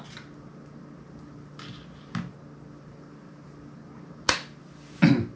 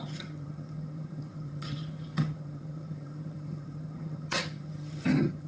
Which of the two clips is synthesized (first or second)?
second